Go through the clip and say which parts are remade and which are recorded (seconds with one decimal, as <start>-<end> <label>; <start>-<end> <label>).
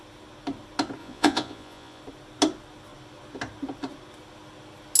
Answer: 0.0-1.0 recorded; 1.0-2.0 remade; 2.0-5.0 recorded